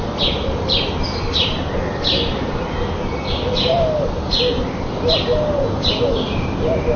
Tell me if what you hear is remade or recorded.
recorded